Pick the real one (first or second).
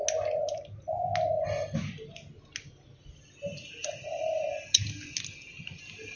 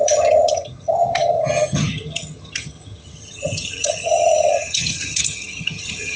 first